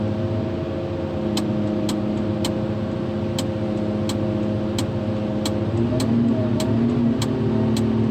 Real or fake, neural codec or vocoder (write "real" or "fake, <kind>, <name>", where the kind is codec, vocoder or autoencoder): real